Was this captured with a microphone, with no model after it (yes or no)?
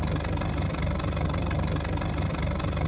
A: yes